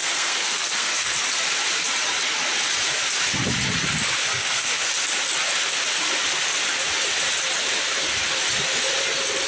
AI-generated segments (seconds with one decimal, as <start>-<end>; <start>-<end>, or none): 0.0-1.1; 4.2-4.9